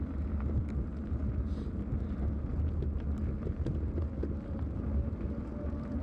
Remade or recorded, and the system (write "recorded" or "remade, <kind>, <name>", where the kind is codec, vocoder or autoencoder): recorded